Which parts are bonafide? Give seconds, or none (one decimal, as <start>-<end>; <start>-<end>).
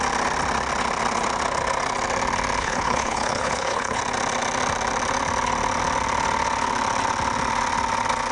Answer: 0.0-2.6; 4.0-8.3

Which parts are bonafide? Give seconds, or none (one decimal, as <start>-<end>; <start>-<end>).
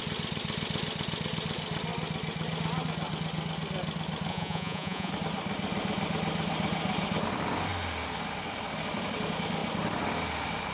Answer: 0.0-4.3; 5.1-10.7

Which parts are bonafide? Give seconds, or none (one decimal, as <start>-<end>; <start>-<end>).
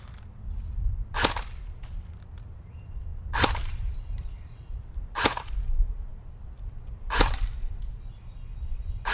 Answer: 0.0-3.1; 4.9-9.1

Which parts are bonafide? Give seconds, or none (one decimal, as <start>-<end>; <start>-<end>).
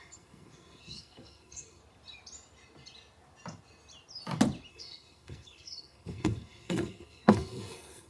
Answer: 1.8-4.7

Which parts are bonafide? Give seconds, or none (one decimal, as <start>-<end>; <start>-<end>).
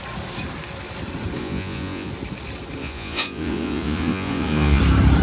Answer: 0.0-1.4; 2.1-2.8; 4.8-5.2